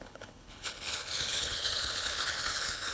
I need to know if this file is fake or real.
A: fake